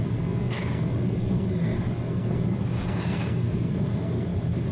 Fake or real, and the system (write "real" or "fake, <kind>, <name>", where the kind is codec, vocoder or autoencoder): fake, codec, SNAC